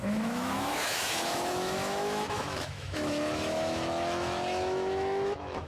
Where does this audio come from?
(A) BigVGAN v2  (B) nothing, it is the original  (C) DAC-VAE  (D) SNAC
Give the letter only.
C